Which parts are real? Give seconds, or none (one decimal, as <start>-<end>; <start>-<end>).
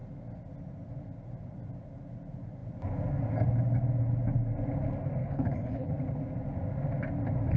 0.0-5.2; 5.9-7.6